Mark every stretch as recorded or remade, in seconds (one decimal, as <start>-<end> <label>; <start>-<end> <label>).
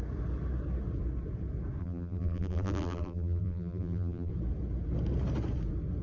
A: 0.0-1.8 recorded; 1.8-4.3 remade; 4.3-6.0 recorded